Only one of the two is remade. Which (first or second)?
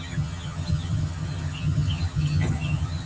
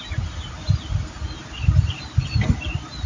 first